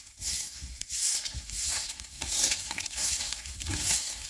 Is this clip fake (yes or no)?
yes